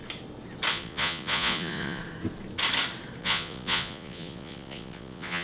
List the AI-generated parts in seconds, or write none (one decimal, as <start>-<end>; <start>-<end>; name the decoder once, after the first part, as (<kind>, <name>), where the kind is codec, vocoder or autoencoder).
0.7-2.0 (vocoder, Vocos); 3.2-5.4